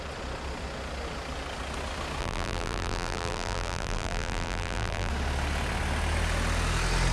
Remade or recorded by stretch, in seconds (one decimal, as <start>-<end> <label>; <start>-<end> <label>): 0.0-2.2 recorded; 2.2-5.1 remade; 5.1-7.1 recorded